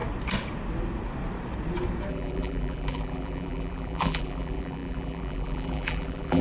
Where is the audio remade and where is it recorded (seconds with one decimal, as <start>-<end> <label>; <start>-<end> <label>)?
0.0-2.1 recorded; 2.1-6.4 remade